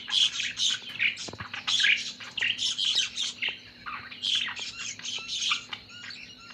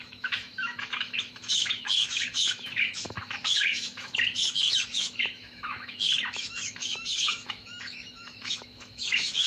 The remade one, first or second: second